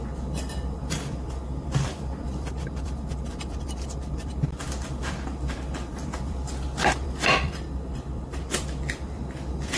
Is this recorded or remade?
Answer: remade